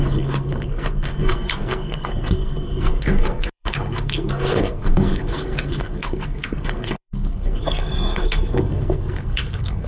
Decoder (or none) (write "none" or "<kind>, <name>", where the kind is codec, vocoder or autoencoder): codec, SNAC